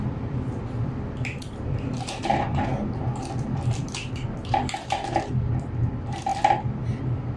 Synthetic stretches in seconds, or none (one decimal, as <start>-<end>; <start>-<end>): none